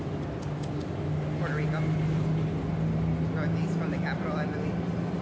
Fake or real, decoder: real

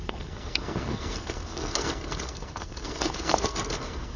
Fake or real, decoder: fake, codec, SNAC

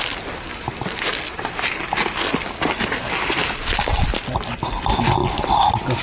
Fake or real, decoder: real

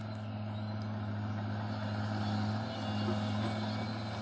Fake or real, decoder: real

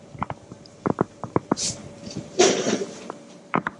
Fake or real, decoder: fake, vocoder, BigVGAN v2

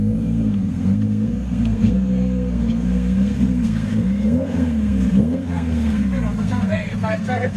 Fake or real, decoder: fake, codec, SNAC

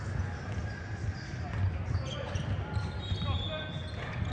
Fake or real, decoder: real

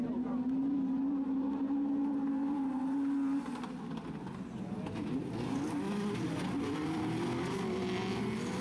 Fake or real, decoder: real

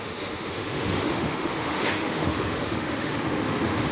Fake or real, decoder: fake, autoencoder, DAC-VAE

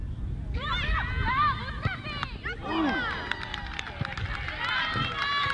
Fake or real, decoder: real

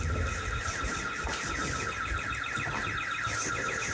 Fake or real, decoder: real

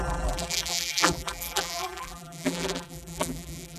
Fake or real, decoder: fake, vocoder, BigVGAN v2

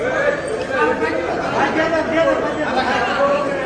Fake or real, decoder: real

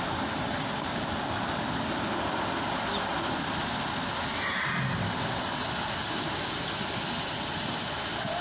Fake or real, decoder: real